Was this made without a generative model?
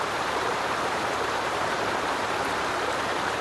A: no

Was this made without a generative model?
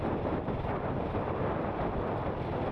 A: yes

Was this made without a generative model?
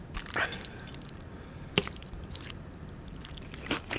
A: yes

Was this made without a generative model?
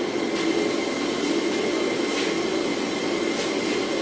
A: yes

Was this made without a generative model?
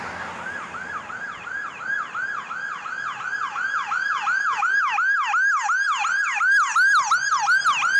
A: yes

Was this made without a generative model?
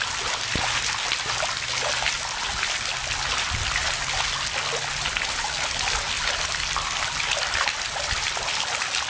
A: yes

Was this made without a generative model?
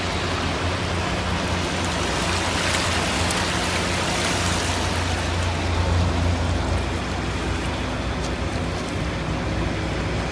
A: yes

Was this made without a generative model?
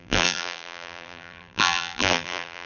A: no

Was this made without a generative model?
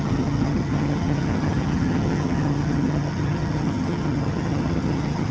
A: no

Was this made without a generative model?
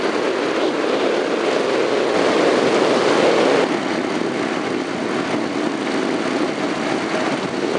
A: yes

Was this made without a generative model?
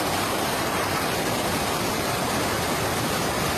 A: yes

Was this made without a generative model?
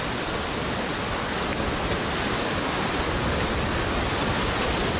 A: yes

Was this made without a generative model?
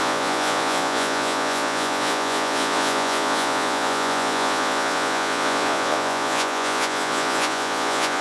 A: no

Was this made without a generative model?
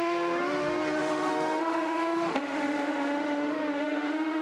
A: no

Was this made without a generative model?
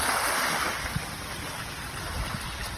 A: yes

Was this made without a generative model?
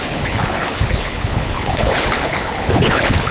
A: no